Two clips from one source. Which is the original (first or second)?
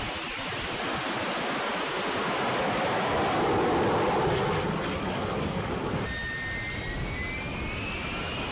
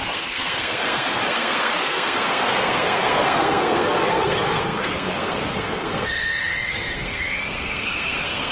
first